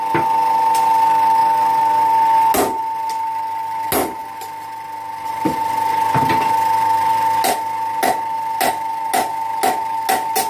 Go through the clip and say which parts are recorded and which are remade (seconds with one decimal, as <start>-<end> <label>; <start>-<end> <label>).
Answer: 0.0-10.5 recorded